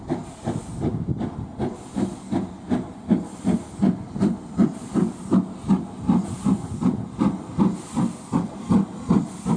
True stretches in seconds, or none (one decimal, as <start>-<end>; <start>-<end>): 0.0-9.6